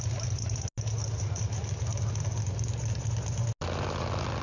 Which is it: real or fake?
real